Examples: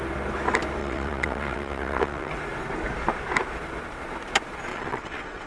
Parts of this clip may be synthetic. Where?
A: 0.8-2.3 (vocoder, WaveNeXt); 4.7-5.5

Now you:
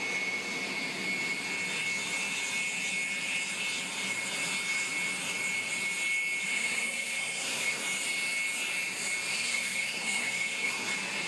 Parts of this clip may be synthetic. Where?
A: 6.4-7.8 (codec, SNAC); 9.3-10.9

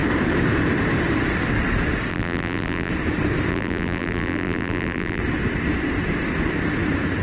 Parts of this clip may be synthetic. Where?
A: 2.1-2.9 (vocoder, BigVGAN v2); 3.5-5.2

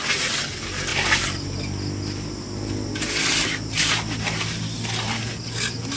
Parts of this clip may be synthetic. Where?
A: none